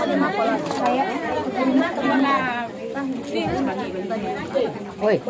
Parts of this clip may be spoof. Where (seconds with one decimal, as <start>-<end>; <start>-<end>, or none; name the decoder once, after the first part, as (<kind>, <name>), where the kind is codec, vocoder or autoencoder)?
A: none